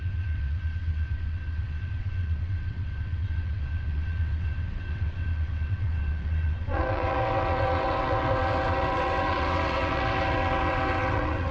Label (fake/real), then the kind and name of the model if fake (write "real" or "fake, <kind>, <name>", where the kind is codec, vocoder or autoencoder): fake, vocoder, WaveNeXt